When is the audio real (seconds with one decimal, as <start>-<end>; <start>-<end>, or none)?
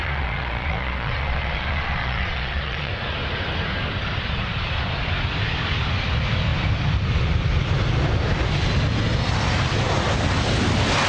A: 2.9-11.1